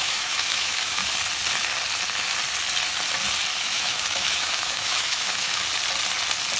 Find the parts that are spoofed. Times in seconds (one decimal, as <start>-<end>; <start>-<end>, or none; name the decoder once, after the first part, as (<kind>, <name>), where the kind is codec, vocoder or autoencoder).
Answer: 0.0-1.0 (autoencoder, DAC-VAE); 3.6-5.6